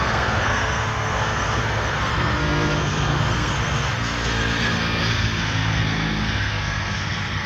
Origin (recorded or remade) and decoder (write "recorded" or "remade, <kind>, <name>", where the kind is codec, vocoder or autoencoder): remade, codec, SNAC